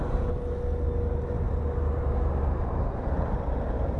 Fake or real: real